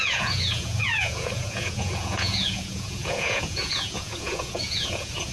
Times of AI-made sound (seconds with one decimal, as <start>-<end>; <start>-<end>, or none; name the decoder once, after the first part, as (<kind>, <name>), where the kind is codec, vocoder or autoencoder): 0.0-5.3 (vocoder, Vocos)